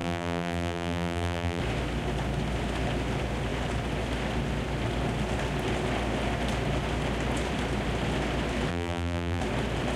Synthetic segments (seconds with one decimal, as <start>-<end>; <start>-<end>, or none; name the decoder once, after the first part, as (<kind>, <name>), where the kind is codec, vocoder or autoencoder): 0.0-1.6 (vocoder, BigVGAN v2); 8.7-9.4